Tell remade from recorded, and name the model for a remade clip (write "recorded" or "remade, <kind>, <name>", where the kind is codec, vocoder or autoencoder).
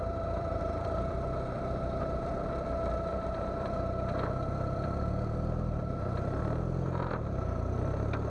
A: remade, vocoder, BigVGAN v2